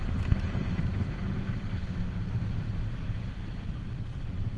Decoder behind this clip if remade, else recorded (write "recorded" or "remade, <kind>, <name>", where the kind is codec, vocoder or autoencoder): recorded